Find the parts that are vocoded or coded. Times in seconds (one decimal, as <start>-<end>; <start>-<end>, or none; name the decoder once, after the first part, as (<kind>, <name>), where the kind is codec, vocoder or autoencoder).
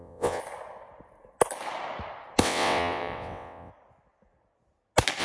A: 0.0-0.4 (vocoder, WaveNeXt); 2.4-3.7